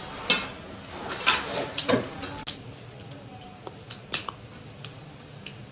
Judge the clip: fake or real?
real